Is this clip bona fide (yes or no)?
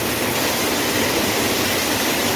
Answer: yes